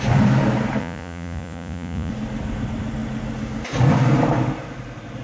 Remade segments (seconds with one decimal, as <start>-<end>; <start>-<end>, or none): 0.8-2.1